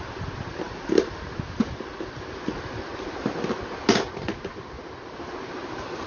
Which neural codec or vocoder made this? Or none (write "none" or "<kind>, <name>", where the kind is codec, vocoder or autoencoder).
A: none